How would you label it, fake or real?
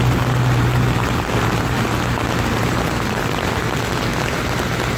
real